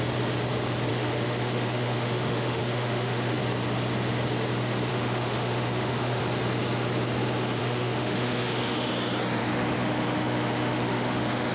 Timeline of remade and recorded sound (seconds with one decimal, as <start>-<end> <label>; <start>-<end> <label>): 0.0-0.9 recorded; 0.9-3.4 remade; 3.4-4.9 recorded; 4.9-6.2 remade; 6.2-7.6 recorded; 7.6-8.9 remade; 8.9-9.4 recorded; 9.4-11.5 remade